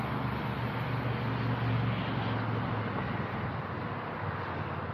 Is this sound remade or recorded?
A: recorded